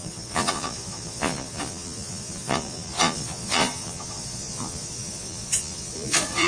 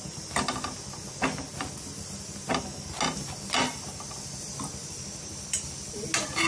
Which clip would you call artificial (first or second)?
first